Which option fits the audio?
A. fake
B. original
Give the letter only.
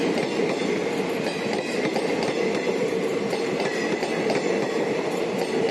B